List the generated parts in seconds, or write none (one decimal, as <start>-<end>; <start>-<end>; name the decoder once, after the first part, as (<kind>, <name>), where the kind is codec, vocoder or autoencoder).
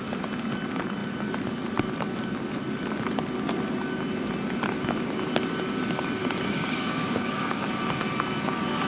6.2-7.7 (codec, DAC)